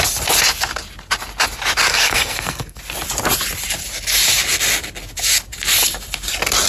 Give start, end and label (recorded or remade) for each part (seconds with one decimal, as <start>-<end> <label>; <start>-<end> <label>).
0.0-1.9 recorded; 1.9-2.8 remade; 2.8-6.7 recorded